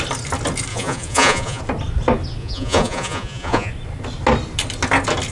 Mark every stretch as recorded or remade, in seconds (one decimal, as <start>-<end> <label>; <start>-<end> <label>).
0.0-0.7 recorded; 0.7-1.6 remade; 1.6-2.4 recorded; 2.4-3.7 remade; 3.7-5.3 recorded